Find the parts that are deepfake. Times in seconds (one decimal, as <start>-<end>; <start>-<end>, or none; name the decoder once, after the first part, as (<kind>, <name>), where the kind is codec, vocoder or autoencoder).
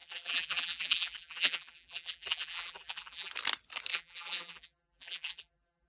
0.0-3.3 (vocoder, BigVGAN v2); 3.9-5.9